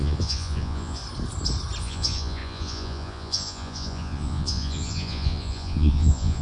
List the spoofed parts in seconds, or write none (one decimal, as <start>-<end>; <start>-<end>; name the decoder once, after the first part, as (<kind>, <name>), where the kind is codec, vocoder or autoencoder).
0.0-1.0 (vocoder, Vocos); 1.8-6.4